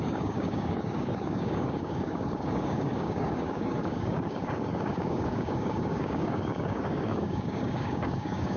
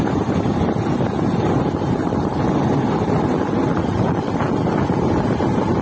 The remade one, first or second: first